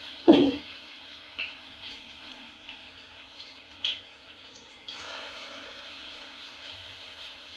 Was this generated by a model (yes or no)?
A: yes